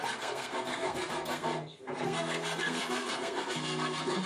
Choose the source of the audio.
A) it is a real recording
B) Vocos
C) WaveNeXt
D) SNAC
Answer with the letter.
D